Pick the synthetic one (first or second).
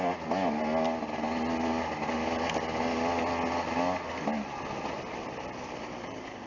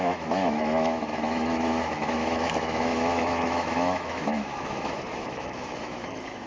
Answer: second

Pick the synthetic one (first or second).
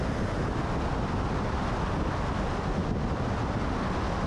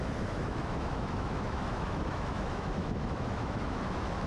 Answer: second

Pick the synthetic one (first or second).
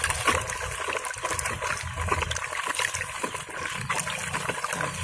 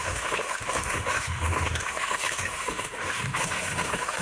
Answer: second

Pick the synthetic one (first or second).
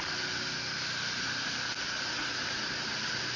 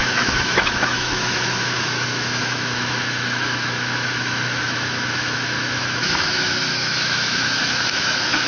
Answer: second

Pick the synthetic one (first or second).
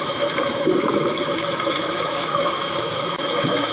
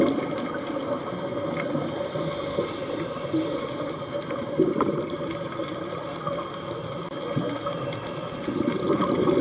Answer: first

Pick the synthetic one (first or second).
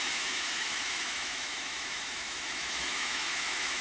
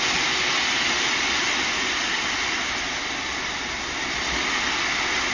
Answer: first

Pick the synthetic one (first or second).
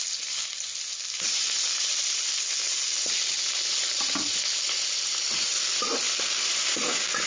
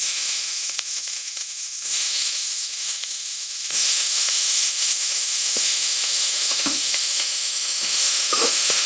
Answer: second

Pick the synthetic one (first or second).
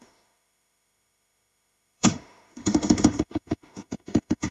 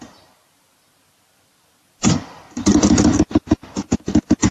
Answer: first